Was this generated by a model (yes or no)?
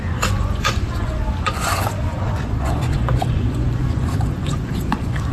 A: yes